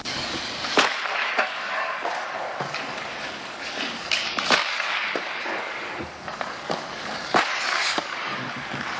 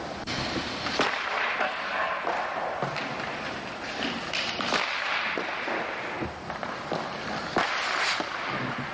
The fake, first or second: first